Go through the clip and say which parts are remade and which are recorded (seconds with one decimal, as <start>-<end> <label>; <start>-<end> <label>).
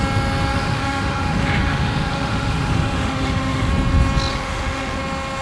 0.0-0.5 recorded; 0.5-3.7 remade; 3.7-4.3 recorded; 4.3-5.0 remade; 5.0-5.4 recorded